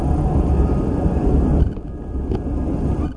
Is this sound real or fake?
real